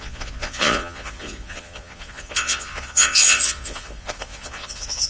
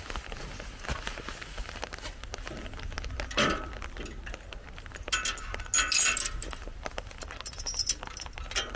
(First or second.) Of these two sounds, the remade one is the first